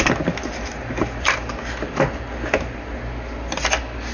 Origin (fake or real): real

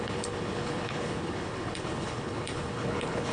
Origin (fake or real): fake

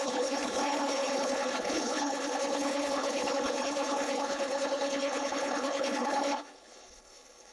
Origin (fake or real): fake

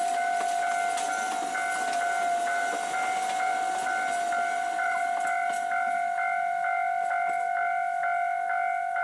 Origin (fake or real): real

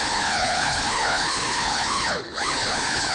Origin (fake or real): fake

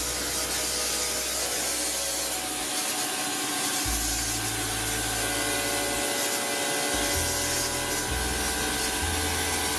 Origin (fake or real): real